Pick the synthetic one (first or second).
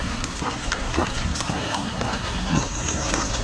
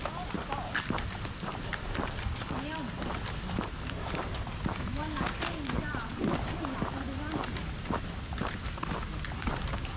first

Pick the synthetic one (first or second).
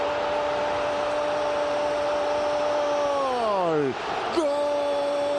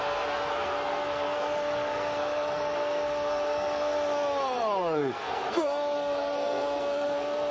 second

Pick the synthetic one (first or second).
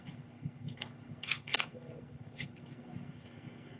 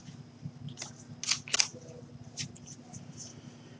first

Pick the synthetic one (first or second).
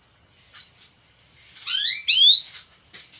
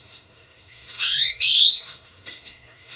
second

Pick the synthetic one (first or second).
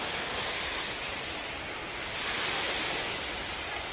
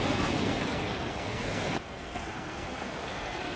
second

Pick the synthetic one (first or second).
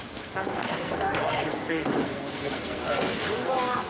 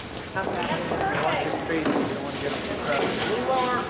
first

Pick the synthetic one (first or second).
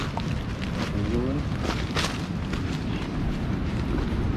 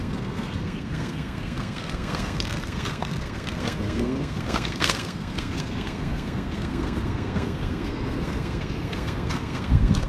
second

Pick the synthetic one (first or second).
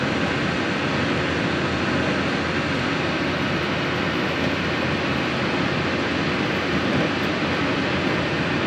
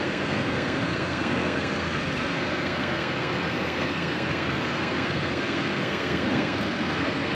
second